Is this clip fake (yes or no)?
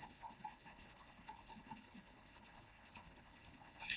yes